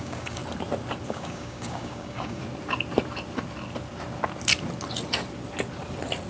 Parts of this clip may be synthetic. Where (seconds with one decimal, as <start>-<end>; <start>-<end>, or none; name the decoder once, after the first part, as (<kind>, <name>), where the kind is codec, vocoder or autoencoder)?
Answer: 0.0-0.4 (codec, DAC); 1.1-2.4